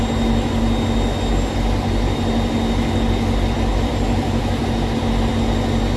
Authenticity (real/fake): real